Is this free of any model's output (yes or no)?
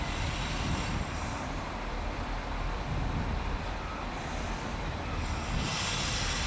no